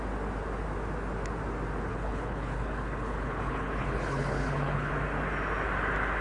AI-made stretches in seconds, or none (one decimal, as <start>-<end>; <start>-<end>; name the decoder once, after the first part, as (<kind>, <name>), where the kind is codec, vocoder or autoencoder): 1.9-4.9 (codec, HILCodec)